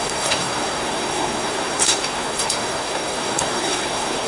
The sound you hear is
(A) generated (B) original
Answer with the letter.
A